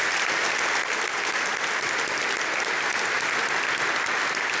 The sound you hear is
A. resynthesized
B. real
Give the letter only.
B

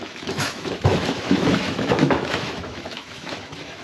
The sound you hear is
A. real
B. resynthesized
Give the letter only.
B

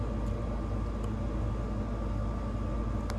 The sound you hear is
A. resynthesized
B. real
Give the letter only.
B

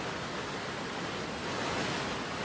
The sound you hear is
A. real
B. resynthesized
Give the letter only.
A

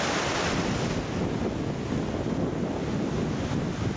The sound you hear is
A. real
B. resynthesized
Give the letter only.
A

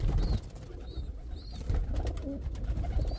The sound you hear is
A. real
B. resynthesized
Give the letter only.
A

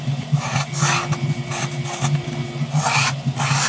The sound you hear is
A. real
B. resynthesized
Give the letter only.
A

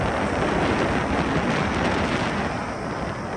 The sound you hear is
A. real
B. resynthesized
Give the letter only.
A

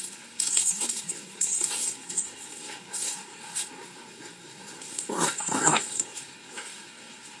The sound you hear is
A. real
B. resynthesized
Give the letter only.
B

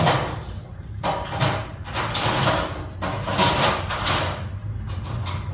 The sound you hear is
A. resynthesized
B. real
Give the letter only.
B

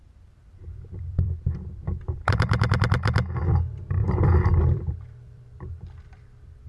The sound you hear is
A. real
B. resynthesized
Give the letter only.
B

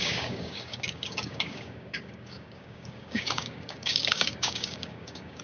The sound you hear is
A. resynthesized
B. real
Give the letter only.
A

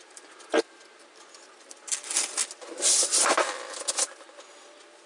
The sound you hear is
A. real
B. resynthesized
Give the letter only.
A